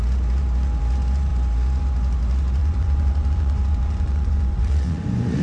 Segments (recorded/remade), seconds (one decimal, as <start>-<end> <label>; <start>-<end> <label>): 0.0-2.6 recorded; 2.6-5.4 remade